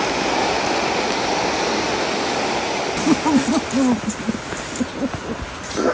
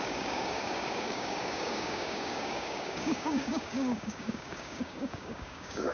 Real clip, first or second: first